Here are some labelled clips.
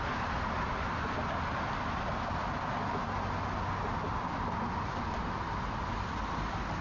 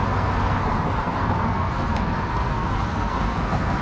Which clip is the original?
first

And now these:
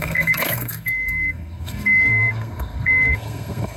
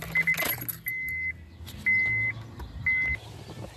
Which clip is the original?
second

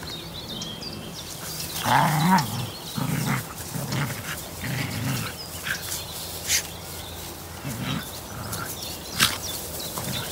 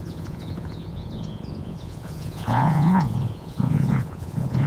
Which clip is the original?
first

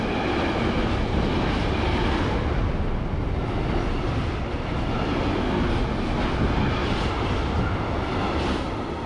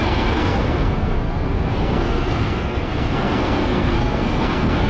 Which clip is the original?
first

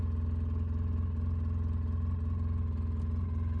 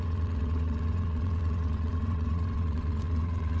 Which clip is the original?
first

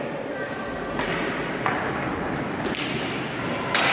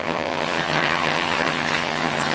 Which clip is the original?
first